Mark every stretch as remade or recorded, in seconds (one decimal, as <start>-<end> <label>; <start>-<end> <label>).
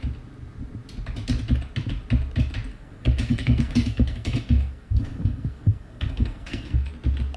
0.0-2.7 recorded; 2.7-6.9 remade; 6.9-7.4 recorded